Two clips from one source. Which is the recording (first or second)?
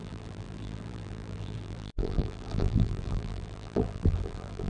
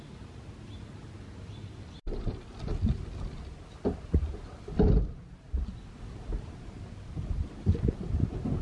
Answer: second